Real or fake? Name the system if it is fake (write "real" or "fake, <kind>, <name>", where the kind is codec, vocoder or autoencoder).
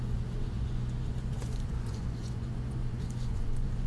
fake, vocoder, Vocos